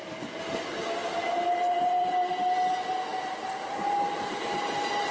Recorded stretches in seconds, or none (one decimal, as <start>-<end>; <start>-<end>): 0.0-5.1